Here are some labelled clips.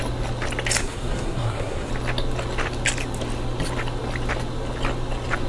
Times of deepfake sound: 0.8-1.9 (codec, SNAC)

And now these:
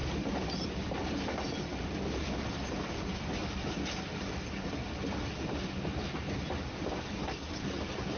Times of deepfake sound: none

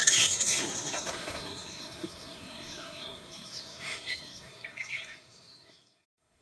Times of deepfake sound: 0.0-6.4 (codec, SNAC)

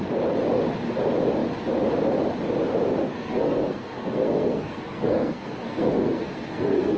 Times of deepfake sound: 3.0-7.0 (codec, SNAC)

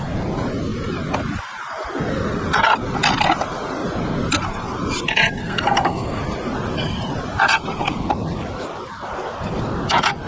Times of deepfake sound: 5.4-6.2 (codec, SNAC)

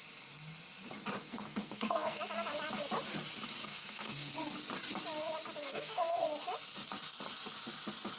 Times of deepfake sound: 1.2-2.2 (codec, SNAC); 3.6-4.3; 5.6-6.2

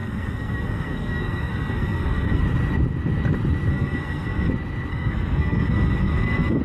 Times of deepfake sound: 0.0-2.4 (codec, SNAC); 3.7-4.5; 4.9-6.6